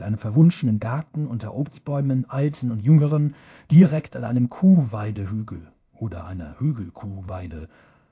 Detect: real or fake fake